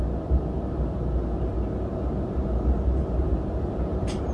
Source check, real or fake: real